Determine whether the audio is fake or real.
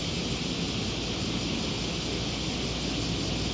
real